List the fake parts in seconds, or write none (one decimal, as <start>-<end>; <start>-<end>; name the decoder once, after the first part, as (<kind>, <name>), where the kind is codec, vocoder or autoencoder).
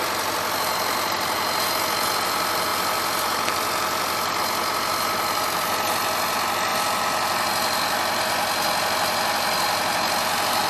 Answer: 2.7-4.4 (vocoder, BigVGAN v2); 6.7-8.2